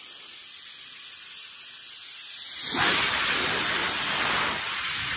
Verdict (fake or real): real